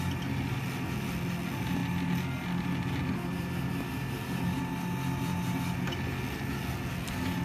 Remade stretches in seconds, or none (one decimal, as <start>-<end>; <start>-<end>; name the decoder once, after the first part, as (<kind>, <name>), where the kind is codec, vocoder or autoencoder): none